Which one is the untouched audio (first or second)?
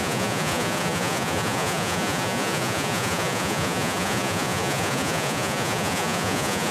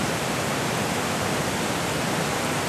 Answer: second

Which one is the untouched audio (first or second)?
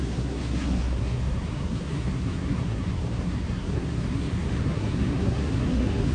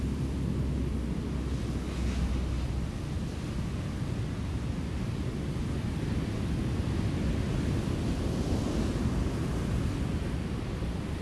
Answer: second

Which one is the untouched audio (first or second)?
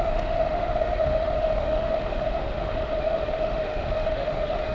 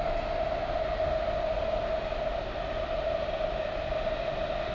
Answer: second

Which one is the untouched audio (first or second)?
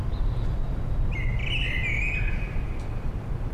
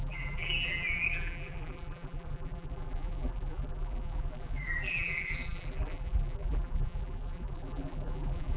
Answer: first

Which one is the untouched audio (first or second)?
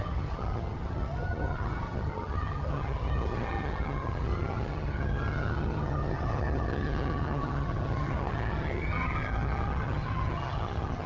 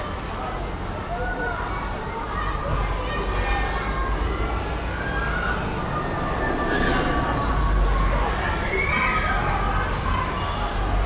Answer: second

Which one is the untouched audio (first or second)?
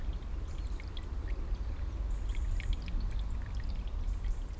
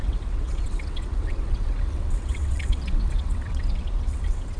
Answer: first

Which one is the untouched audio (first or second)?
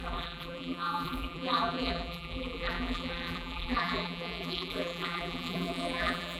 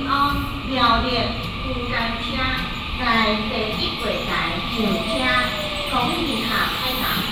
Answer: second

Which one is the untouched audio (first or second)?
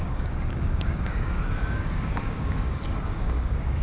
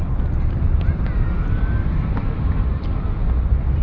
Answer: second